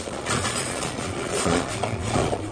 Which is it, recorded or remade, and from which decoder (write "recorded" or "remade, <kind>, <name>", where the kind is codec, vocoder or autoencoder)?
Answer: remade, vocoder, Vocos